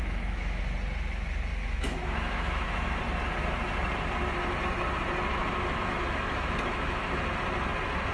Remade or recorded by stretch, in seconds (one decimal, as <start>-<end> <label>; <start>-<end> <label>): 0.0-0.6 remade; 0.6-1.5 recorded; 1.5-3.0 remade; 3.0-5.4 recorded; 5.4-7.2 remade; 7.2-8.1 recorded